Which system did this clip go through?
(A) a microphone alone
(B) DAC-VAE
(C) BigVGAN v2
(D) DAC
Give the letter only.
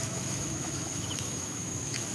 B